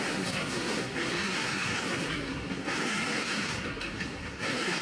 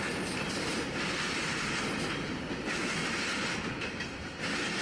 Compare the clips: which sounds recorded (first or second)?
second